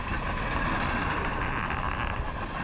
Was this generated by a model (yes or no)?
no